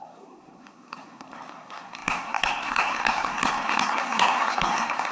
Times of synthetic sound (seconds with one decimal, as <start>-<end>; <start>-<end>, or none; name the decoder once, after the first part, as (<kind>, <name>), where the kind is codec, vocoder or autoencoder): 0.0-5.1 (codec, SNAC)